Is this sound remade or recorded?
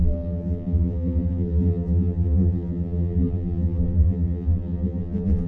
remade